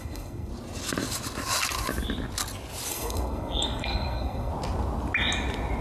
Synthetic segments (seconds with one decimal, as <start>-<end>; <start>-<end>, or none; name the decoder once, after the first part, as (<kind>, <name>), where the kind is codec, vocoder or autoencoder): 0.0-0.5 (codec, SNAC); 2.9-4.5